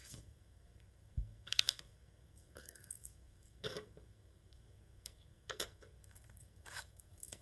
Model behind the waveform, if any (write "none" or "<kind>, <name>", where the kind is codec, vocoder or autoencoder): codec, SNAC